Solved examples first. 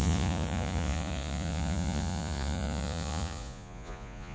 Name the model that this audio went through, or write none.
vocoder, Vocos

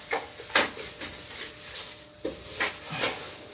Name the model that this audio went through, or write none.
none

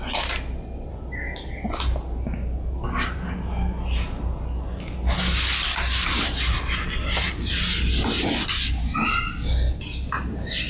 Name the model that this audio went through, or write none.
none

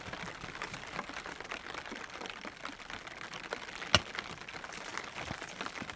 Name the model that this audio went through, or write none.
none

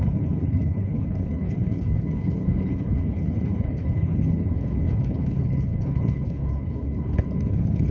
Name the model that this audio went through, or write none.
codec, HILCodec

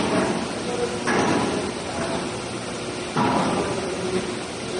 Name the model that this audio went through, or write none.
none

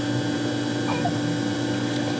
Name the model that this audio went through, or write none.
none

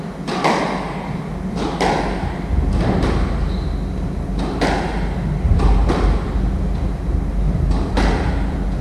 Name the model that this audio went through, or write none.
none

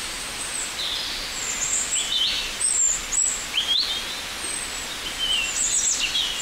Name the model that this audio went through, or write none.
none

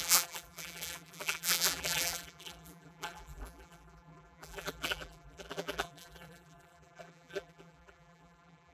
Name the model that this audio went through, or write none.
vocoder, BigVGAN v2